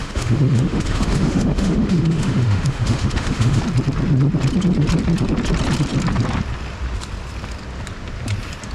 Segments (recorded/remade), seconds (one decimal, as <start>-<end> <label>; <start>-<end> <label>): 0.0-3.6 remade; 3.6-8.7 recorded